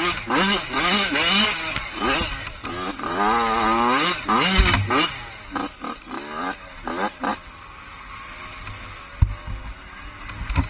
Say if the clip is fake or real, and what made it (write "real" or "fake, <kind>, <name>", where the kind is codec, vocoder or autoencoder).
real